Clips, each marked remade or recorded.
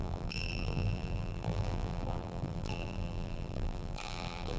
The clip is remade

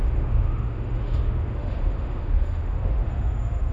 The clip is remade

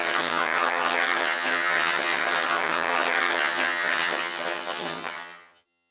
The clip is remade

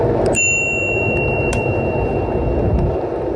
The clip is recorded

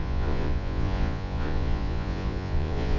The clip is remade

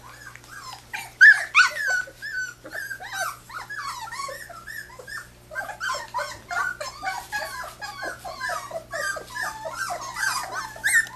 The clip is recorded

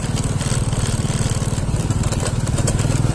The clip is recorded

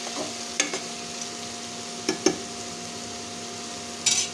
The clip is recorded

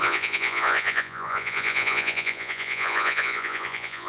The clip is remade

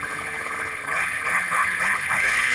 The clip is remade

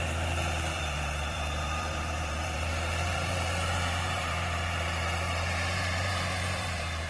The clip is remade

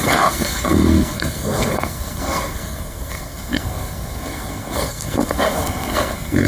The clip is remade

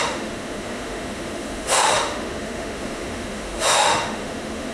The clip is remade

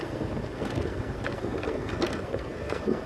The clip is remade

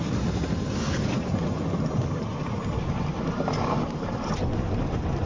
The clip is recorded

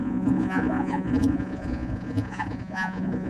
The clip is remade